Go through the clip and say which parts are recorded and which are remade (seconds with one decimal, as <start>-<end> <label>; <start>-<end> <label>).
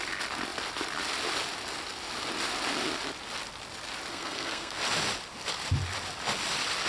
0.0-4.1 recorded; 4.1-4.8 remade; 4.8-6.9 recorded